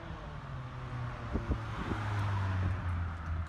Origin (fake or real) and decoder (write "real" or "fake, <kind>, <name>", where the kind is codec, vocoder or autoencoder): real